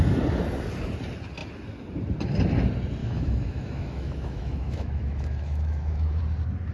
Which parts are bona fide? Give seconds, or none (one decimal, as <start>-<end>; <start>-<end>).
0.0-3.0; 6.2-6.7